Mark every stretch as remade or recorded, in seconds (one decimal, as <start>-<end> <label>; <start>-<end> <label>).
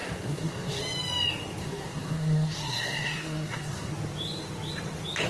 0.0-0.8 remade; 0.8-1.6 recorded; 1.6-3.9 remade; 3.9-5.3 recorded